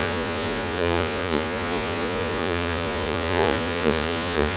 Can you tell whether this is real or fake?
fake